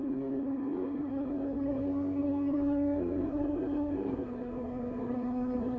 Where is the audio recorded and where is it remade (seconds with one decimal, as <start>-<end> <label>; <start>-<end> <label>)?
0.0-5.8 remade